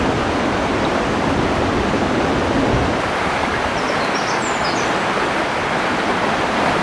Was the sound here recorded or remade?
recorded